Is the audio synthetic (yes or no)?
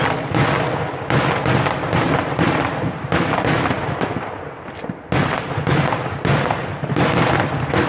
no